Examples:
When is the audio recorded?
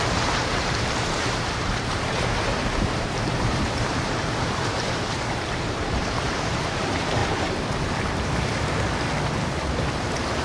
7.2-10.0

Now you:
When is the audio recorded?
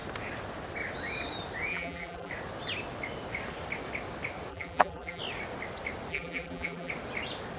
0.0-1.7; 2.3-4.5; 5.2-6.1; 6.9-7.6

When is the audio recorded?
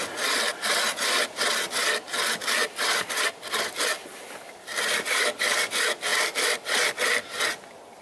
0.0-8.0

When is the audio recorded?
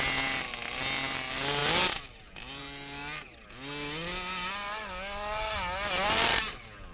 0.0-6.9